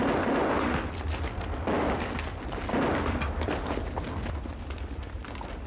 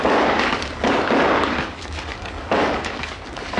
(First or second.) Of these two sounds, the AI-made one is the second